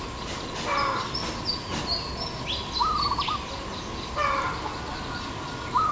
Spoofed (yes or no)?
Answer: no